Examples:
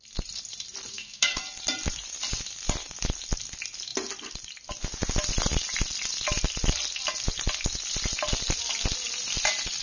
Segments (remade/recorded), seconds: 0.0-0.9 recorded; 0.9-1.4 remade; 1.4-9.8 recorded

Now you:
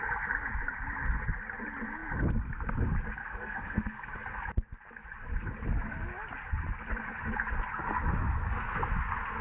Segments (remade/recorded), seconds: 0.0-3.2 recorded; 3.2-4.1 remade; 4.1-9.4 recorded

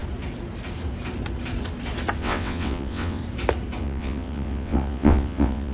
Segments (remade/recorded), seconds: 0.0-2.2 recorded; 2.2-3.2 remade; 3.2-3.8 recorded; 3.8-5.7 remade